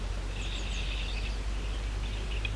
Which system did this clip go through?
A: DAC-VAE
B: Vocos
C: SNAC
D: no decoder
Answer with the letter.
D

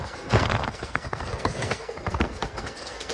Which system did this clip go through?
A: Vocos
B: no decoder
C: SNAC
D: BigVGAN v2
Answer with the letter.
C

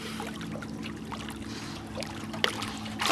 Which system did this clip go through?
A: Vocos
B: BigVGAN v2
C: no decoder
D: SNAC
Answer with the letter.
C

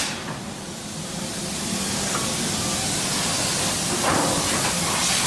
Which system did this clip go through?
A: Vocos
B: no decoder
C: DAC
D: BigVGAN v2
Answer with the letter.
B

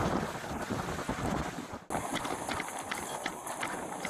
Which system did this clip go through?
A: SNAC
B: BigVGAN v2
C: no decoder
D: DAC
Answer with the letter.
C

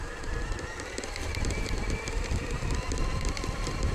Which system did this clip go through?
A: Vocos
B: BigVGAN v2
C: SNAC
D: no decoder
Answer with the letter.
B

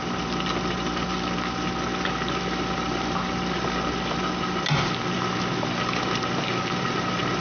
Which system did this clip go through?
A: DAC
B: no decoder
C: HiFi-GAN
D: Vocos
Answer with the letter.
B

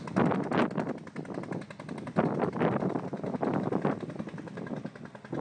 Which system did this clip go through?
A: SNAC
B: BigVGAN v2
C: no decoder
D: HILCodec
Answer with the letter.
C